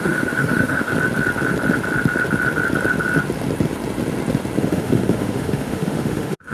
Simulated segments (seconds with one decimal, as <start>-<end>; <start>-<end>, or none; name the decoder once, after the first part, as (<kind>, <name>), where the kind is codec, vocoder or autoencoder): 0.0-0.9 (autoencoder, DAC-VAE); 4.6-6.5